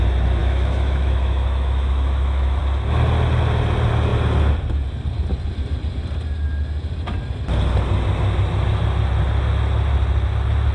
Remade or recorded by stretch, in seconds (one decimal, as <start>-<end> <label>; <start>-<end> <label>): 0.0-0.4 recorded; 0.4-2.6 remade; 2.6-10.7 recorded